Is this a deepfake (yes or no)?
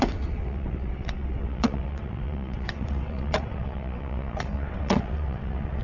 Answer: yes